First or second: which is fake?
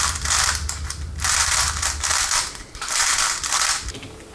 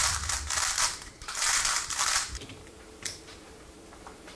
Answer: second